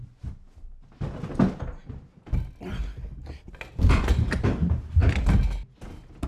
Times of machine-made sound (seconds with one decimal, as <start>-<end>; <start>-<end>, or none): none